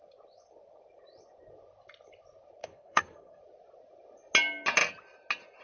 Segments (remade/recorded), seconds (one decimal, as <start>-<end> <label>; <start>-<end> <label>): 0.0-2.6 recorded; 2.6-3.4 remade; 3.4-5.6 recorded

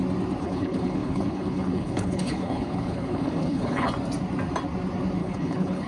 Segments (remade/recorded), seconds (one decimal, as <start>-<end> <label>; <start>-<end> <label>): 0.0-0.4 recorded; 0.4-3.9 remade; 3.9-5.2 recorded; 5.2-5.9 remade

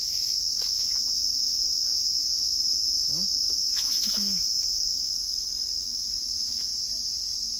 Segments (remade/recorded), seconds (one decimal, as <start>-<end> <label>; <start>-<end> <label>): 0.0-6.7 remade; 6.7-7.6 recorded

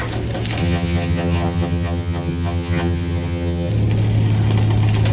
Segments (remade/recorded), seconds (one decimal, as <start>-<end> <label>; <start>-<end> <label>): 0.0-0.6 recorded; 0.6-3.7 remade; 3.7-5.1 recorded